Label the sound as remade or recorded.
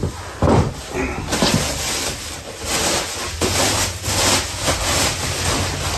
recorded